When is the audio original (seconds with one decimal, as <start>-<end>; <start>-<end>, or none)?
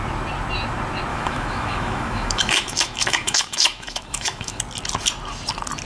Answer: 0.0-1.1; 4.6-5.8